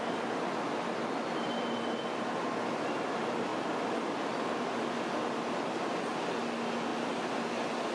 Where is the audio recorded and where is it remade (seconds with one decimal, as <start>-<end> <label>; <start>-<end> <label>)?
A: 0.0-7.9 recorded